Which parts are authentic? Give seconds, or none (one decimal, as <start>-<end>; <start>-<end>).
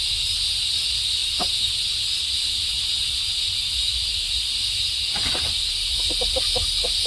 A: 0.0-7.1